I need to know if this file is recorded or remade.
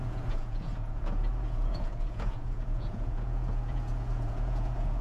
remade